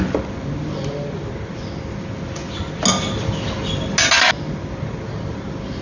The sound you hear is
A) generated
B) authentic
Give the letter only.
B